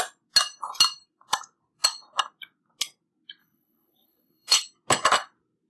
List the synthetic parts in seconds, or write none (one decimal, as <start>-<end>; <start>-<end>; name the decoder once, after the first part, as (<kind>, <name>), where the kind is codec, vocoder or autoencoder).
3.4-4.6 (codec, HILCodec)